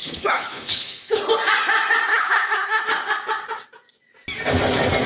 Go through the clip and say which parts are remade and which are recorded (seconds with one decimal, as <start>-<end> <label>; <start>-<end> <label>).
0.0-1.2 remade; 1.2-2.1 recorded; 2.1-2.8 remade; 2.8-5.1 recorded